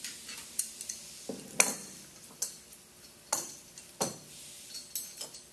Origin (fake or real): real